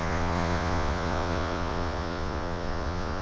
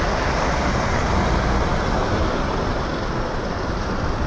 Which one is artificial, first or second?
first